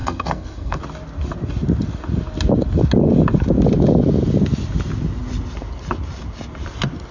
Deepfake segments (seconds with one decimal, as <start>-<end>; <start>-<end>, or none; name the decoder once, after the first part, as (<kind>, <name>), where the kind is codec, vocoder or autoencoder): 0.0-0.8 (codec, SNAC)